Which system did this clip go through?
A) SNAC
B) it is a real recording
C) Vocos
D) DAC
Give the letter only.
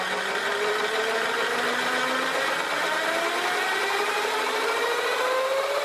B